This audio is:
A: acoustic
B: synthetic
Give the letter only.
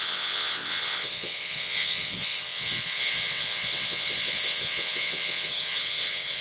B